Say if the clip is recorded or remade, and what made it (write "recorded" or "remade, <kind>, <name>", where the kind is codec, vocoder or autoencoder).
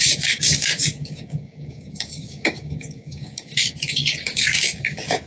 remade, codec, DAC